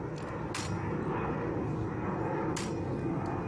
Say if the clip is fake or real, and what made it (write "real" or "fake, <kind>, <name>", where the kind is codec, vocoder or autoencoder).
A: real